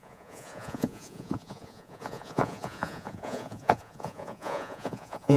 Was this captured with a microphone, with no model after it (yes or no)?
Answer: no